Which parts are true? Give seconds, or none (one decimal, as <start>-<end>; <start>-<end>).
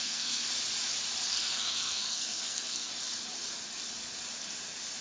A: 0.4-1.3; 2.9-5.0